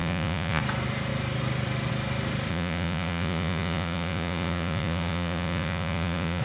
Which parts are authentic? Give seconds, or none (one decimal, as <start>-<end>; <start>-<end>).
0.6-2.5